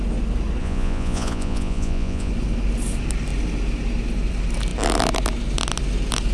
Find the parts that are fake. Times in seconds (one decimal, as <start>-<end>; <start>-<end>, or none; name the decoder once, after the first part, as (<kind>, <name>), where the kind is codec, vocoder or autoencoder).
0.6-2.3 (vocoder, Vocos)